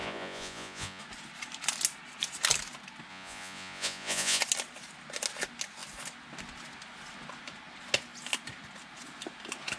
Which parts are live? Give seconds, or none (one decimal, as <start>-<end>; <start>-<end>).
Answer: 1.0-3.1; 4.4-9.8